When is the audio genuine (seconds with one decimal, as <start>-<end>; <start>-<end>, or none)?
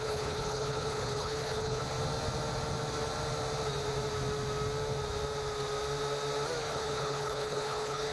1.8-6.6